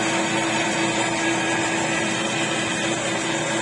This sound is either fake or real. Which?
real